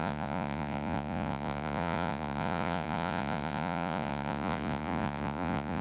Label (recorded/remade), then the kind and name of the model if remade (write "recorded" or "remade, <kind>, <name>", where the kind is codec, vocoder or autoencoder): remade, vocoder, Vocos